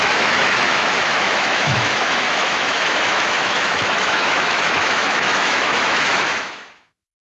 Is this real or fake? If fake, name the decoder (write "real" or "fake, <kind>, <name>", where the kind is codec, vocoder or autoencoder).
fake, autoencoder, DAC-VAE